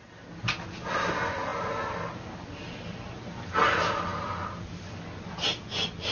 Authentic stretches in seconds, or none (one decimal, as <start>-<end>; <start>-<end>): 0.0-6.1